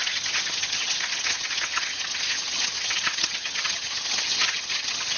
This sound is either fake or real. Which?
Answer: fake